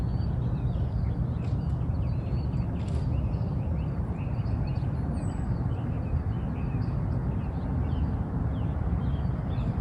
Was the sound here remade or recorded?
recorded